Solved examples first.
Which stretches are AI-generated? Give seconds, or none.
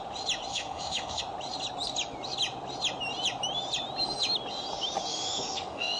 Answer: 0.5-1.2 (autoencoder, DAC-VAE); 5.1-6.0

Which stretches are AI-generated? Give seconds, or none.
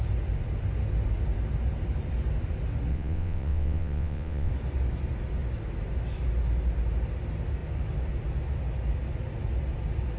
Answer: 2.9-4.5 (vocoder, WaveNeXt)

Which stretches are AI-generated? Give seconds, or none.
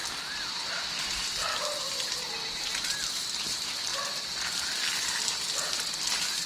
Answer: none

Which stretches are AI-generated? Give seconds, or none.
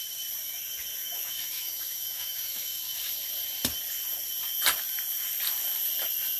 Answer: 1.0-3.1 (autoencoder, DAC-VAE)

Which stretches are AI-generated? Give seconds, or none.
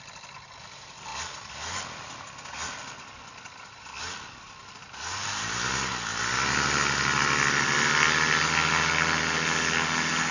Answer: none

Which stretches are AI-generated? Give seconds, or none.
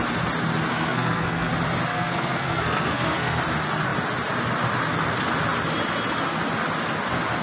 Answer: 0.7-1.5 (codec, SNAC); 1.9-3.4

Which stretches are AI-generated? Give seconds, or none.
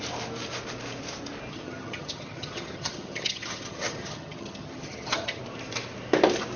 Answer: 1.5-5.4 (vocoder, HiFi-GAN)